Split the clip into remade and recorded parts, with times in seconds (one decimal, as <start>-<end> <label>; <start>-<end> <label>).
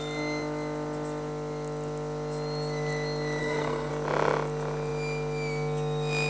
0.0-3.4 recorded; 3.4-3.9 remade; 3.9-6.3 recorded